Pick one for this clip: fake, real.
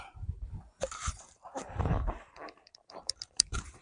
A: fake